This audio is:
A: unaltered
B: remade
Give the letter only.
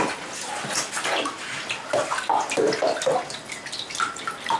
A